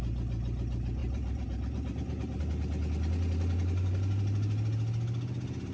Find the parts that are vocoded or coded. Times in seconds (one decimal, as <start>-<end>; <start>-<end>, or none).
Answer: 1.0-2.4